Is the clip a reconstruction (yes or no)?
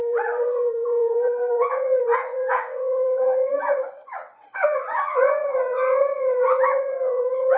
yes